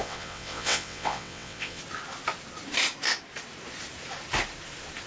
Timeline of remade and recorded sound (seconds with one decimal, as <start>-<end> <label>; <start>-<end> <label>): 0.0-1.8 remade; 1.8-5.1 recorded